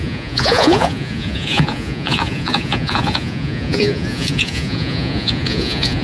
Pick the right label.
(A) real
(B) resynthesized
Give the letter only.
B